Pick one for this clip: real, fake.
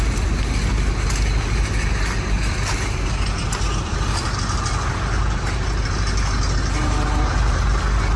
real